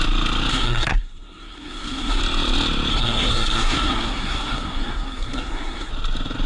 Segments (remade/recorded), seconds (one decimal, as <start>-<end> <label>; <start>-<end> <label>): 0.0-0.5 recorded; 0.5-2.2 remade; 2.2-2.9 recorded; 2.9-5.9 remade; 5.9-6.5 recorded

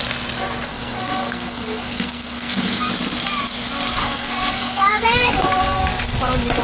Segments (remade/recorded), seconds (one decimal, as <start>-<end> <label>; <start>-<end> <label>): 0.0-0.7 recorded; 0.7-2.9 remade; 2.9-4.0 recorded; 4.0-5.6 remade; 5.6-6.6 recorded

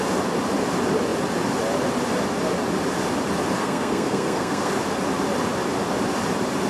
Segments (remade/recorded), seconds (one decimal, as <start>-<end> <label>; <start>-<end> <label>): 0.0-3.6 recorded; 3.6-4.7 remade; 4.7-6.7 recorded